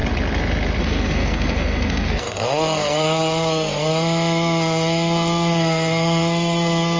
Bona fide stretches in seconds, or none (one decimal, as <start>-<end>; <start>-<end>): 0.0-0.8